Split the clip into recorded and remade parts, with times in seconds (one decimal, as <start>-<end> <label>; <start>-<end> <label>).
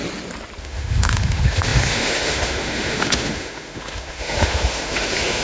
0.0-0.6 recorded; 0.6-5.4 remade